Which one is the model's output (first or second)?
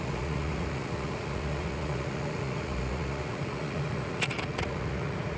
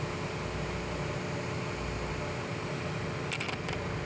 first